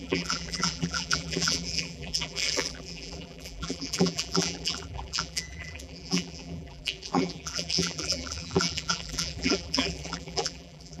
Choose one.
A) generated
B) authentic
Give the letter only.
A